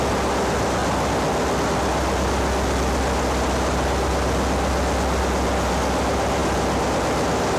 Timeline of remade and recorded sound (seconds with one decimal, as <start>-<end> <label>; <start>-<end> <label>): 0.0-7.6 recorded